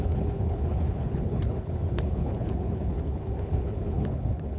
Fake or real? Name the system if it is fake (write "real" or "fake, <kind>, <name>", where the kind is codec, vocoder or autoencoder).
fake, codec, HILCodec